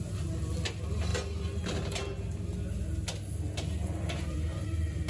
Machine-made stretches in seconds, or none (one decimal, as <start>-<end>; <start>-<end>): none